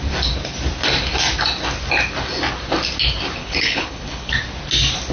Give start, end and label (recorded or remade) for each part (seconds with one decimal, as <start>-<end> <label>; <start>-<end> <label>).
0.0-3.4 recorded; 3.4-4.3 remade; 4.3-5.1 recorded